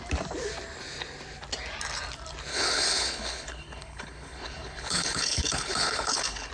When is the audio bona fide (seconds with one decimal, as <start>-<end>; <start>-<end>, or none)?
0.0-2.5